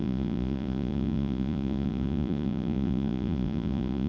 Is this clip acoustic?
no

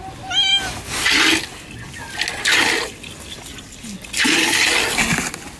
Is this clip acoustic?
yes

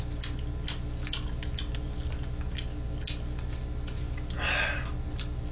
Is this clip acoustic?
yes